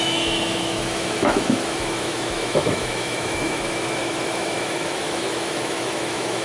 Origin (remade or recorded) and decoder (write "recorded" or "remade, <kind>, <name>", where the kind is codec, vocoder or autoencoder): remade, autoencoder, DAC-VAE